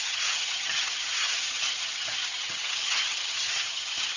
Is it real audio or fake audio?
fake